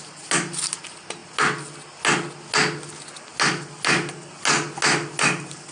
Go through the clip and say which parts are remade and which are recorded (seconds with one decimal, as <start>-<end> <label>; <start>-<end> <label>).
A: 0.0-5.7 recorded